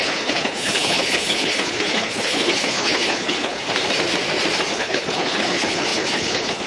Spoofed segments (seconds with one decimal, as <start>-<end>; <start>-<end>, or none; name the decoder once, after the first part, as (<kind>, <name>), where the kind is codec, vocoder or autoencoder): 0.0-3.6 (codec, HILCodec); 4.7-6.7